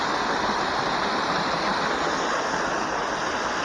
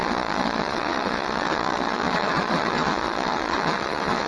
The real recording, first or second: first